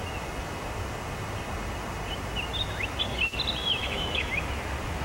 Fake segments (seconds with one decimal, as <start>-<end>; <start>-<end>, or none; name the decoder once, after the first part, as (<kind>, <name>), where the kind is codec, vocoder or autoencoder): 3.8-4.3 (autoencoder, DAC-VAE)